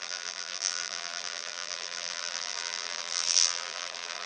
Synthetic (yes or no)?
yes